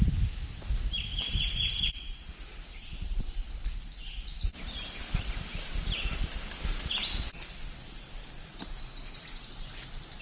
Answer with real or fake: real